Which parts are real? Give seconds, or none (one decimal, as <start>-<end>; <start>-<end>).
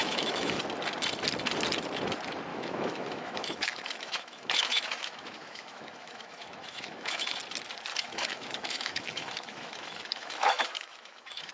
0.6-2.5; 7.4-7.9